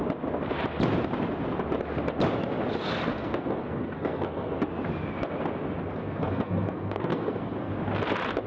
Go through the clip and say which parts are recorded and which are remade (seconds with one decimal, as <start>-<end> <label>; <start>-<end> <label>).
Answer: 0.0-3.1 recorded; 3.1-4.6 remade; 4.6-6.0 recorded; 6.0-7.7 remade; 7.7-8.5 recorded